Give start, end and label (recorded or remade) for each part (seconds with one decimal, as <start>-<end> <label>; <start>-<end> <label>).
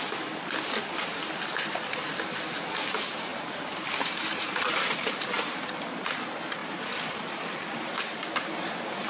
0.0-3.3 recorded; 3.3-3.9 remade; 3.9-6.6 recorded; 6.6-7.6 remade; 7.6-9.1 recorded